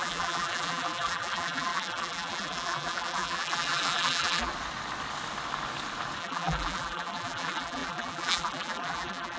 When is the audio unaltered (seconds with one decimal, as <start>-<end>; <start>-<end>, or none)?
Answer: 4.5-6.2